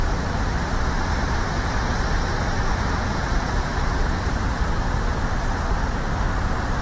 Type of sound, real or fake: fake